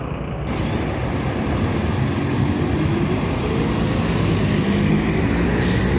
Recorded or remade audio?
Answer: recorded